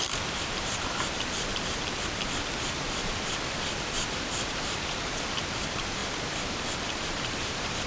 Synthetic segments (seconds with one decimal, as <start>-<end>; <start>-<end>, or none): 0.0-1.5; 2.7-6.0; 7.0-7.9